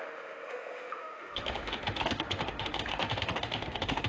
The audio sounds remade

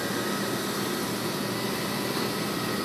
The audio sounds recorded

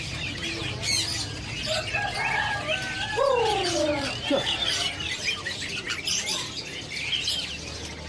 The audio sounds recorded